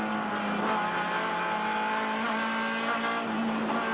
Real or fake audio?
real